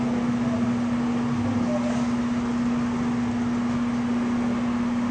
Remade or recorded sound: recorded